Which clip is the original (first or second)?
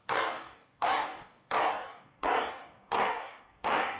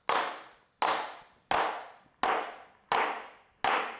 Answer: second